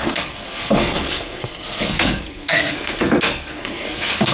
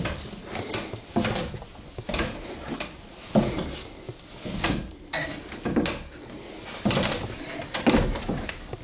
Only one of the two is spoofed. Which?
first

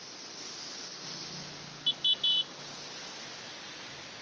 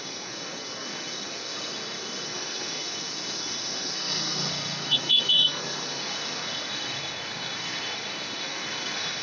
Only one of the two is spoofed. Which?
second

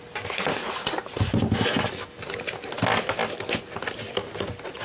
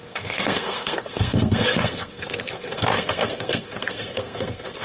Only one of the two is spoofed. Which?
second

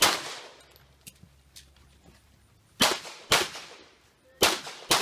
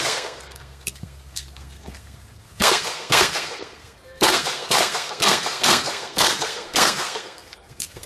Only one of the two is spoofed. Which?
second